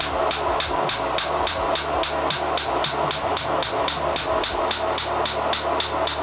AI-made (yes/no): no